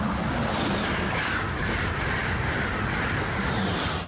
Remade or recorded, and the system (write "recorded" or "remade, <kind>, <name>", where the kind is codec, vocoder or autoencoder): recorded